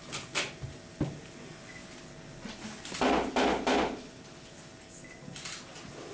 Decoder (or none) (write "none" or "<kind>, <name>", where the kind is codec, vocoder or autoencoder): none